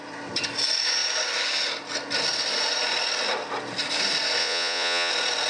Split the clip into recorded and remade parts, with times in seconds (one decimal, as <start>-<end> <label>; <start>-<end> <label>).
0.0-4.4 recorded; 4.4-5.1 remade; 5.1-5.5 recorded